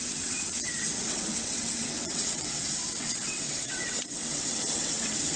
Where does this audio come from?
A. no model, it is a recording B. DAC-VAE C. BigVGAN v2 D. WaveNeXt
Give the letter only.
D